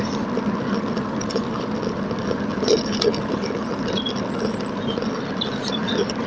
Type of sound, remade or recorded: recorded